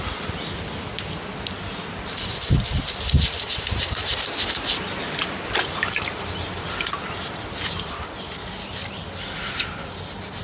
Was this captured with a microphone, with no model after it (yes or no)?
yes